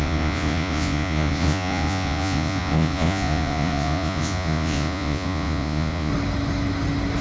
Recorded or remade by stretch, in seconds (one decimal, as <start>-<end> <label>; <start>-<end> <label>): 0.0-6.1 remade; 6.1-7.2 recorded